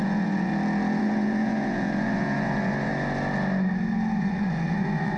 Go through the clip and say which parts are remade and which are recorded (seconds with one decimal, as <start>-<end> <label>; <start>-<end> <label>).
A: 0.0-0.5 remade; 0.5-1.0 recorded; 1.0-2.9 remade; 2.9-4.2 recorded; 4.2-5.2 remade